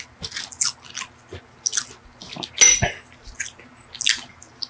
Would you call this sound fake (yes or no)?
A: no